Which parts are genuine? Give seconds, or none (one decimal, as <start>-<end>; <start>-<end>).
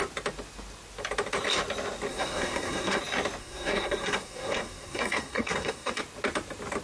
0.0-2.1; 3.0-3.4; 6.0-6.8